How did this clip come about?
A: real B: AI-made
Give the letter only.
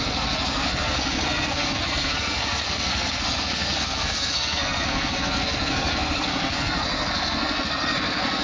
B